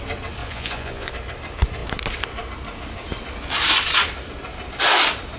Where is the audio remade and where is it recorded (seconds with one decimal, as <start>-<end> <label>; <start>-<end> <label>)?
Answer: 0.0-0.4 recorded; 0.4-1.1 remade; 1.1-5.4 recorded